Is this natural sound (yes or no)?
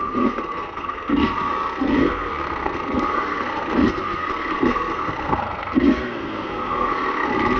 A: no